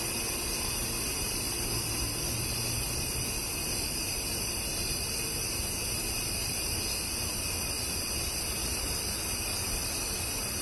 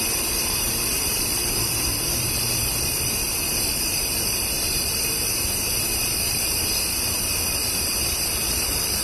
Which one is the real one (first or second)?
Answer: first